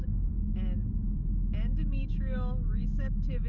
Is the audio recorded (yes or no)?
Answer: no